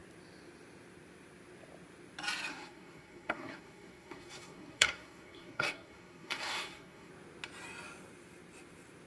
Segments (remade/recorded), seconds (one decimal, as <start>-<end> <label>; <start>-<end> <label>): 0.0-2.5 recorded; 2.5-7.1 remade; 7.1-9.1 recorded